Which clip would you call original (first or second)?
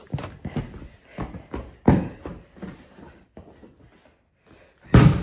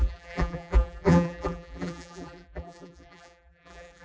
first